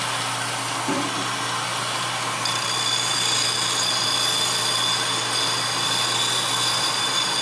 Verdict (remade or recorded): recorded